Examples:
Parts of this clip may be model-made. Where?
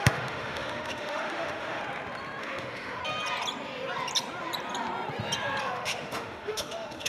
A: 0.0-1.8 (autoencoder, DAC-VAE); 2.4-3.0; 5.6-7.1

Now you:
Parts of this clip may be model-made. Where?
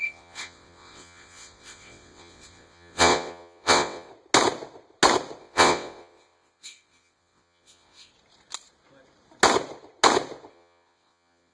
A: 0.0-4.1 (vocoder, WaveNeXt); 5.4-8.1; 10.5-11.5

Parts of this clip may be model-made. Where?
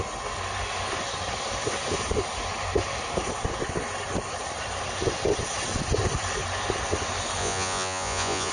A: 7.4-8.5 (vocoder, Vocos)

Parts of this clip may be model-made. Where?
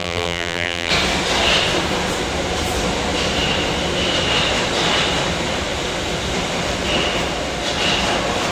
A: 0.0-0.9 (vocoder, BigVGAN v2)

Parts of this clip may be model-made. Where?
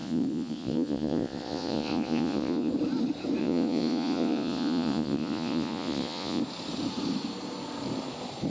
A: 0.0-2.7 (vocoder, Vocos); 3.4-6.4